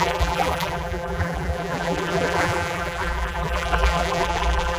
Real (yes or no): no